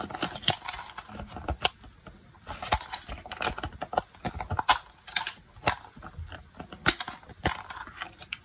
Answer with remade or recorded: recorded